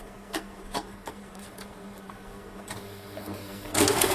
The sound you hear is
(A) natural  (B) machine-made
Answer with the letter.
B